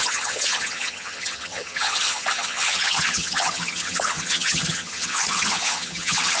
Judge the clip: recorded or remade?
remade